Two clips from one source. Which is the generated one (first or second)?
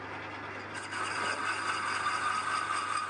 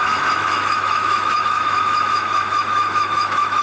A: second